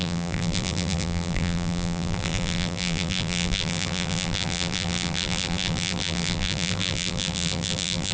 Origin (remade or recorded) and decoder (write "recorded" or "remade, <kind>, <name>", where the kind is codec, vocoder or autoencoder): remade, vocoder, BigVGAN v2